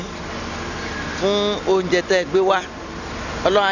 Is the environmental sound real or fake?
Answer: real